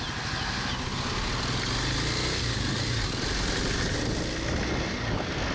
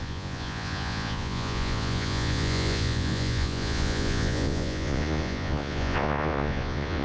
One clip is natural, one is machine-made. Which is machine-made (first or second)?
second